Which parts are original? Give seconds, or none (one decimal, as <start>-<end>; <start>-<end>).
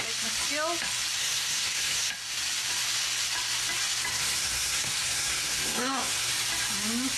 0.0-1.2; 2.1-4.1; 6.3-7.2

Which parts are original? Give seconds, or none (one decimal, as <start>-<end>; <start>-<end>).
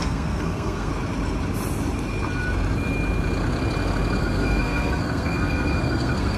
0.9-4.2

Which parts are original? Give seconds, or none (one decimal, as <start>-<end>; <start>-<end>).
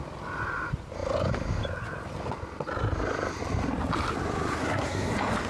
0.0-4.6; 5.1-5.5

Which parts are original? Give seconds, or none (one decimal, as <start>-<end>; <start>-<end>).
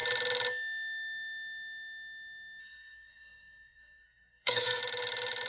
0.0-2.6; 4.8-5.5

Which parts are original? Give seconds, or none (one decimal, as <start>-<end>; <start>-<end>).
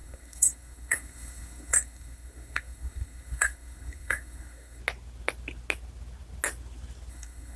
4.8-7.1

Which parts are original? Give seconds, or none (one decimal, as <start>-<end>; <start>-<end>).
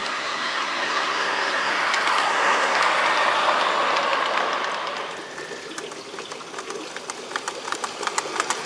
1.7-2.2; 2.8-8.7